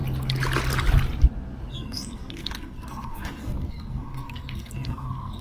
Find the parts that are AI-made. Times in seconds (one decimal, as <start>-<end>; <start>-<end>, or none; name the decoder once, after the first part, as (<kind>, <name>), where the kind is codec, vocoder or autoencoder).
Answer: 1.7-5.4 (codec, SNAC)